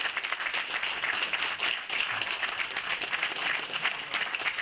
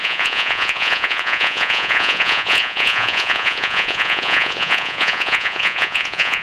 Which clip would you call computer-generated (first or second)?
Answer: second